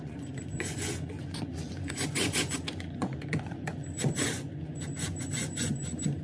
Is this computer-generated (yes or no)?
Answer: yes